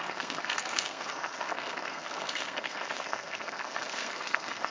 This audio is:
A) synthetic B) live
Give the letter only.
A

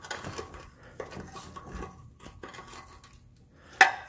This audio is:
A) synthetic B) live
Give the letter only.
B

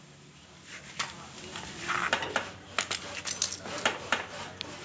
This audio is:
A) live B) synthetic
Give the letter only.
A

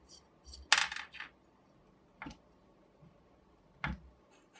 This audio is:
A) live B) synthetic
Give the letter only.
A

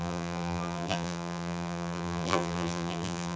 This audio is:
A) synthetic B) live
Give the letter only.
A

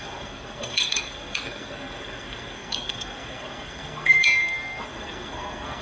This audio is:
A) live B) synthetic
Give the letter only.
B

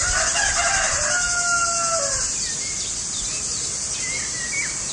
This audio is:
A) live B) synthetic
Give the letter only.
A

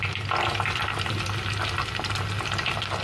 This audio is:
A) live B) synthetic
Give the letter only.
A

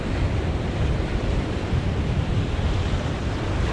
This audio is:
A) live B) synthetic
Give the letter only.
B